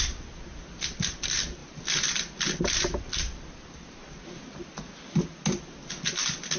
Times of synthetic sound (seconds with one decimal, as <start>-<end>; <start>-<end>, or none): none